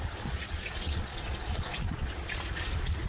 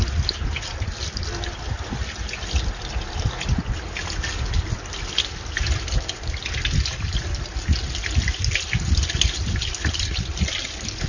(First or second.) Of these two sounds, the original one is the second